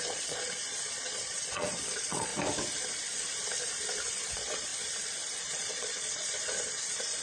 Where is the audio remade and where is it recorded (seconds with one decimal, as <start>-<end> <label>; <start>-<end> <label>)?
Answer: 0.0-2.3 remade; 2.3-4.2 recorded; 4.2-4.7 remade; 4.7-5.4 recorded; 5.4-7.2 remade